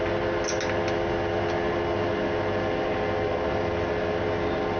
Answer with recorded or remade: recorded